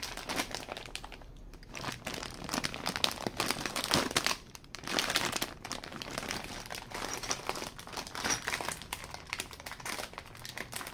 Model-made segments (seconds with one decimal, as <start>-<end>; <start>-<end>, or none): 0.0-1.4; 3.8-10.9